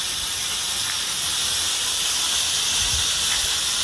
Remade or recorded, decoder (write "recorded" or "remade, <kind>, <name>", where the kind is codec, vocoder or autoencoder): recorded